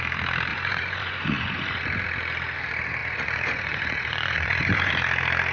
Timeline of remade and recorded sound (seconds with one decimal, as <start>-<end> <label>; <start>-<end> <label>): 0.0-0.5 recorded; 0.5-1.8 remade; 1.8-3.0 recorded; 3.0-4.9 remade; 4.9-5.5 recorded